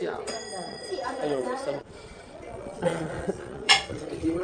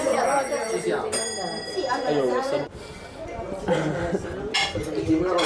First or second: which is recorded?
second